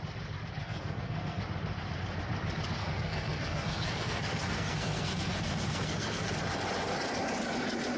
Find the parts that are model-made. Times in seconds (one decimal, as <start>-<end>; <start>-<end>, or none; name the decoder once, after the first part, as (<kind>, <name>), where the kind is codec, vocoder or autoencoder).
0.6-1.4 (codec, SNAC); 2.8-6.3